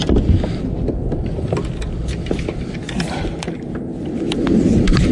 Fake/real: real